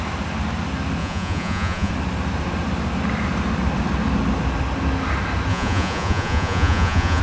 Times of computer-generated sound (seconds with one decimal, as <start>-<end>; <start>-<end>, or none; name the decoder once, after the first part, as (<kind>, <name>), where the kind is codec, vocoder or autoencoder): 1.0-1.9 (vocoder, Vocos); 5.5-7.2